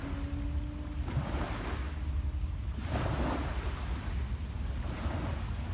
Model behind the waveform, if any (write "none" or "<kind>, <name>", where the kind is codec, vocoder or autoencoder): none